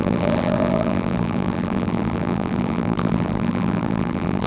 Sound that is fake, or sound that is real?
fake